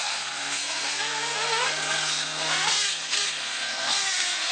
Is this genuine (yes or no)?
no